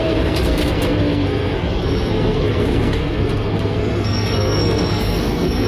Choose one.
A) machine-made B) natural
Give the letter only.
A